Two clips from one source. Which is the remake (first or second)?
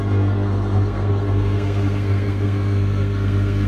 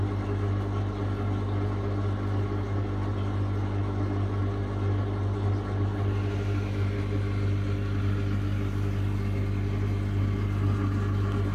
first